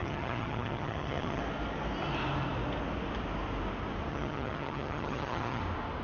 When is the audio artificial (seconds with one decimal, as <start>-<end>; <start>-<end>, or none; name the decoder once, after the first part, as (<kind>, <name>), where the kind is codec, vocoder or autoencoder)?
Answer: 0.0-1.4 (vocoder, HiFi-GAN); 4.1-5.6